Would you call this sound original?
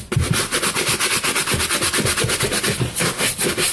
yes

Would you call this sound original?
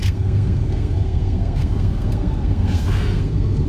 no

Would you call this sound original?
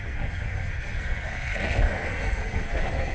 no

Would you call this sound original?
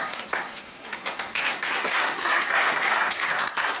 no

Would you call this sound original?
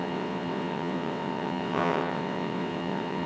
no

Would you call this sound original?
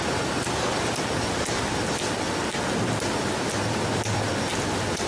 yes